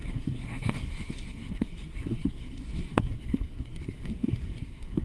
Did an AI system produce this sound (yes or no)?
yes